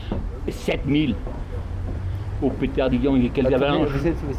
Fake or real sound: fake